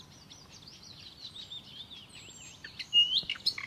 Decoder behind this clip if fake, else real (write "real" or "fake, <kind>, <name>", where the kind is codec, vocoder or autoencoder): real